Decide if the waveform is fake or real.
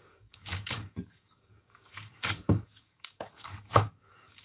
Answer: fake